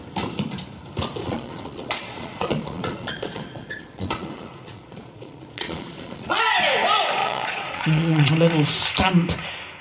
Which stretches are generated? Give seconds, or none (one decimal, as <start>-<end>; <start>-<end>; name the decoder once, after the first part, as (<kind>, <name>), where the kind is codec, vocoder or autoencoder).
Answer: 1.2-6.4 (vocoder, Vocos); 7.2-8.3

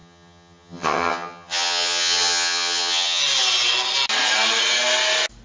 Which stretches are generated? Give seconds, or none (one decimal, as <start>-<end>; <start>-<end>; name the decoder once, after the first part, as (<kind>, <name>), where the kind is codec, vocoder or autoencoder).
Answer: 0.0-3.2 (vocoder, HiFi-GAN)